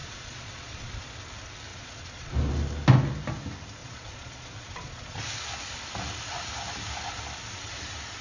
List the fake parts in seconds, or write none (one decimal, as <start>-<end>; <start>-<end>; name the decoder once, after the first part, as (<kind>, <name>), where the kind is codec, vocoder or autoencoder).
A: 0.0-1.1 (vocoder, Vocos); 1.7-2.3; 3.8-5.2